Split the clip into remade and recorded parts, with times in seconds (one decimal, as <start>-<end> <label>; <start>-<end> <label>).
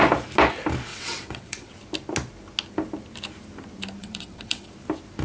0.0-0.9 recorded; 0.9-1.7 remade; 1.7-4.0 recorded; 4.0-4.7 remade; 4.7-5.2 recorded